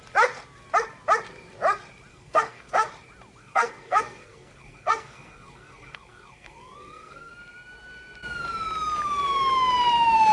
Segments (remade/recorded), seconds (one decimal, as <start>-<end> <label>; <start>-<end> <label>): 0.0-2.1 recorded; 2.1-2.9 remade; 2.9-3.4 recorded; 3.4-7.3 remade; 7.3-10.3 recorded